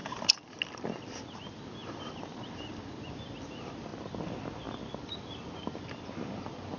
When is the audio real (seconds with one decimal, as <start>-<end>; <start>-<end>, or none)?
0.0-1.8; 2.4-6.8